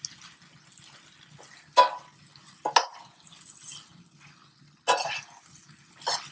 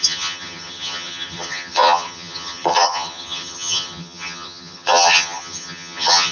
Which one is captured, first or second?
first